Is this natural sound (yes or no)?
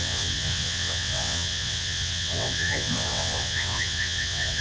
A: no